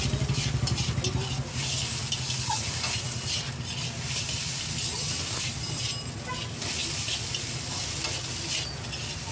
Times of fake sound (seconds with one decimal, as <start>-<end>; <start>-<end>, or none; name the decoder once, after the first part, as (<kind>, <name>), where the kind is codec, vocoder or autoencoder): none